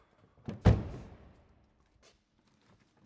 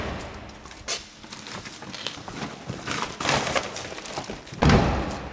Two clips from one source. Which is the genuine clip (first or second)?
second